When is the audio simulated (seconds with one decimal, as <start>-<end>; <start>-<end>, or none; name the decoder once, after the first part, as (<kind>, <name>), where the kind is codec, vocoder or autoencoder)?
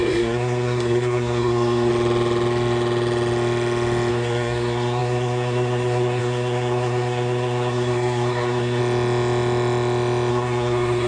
0.0-1.9 (codec, SNAC); 4.1-8.8; 10.3-11.1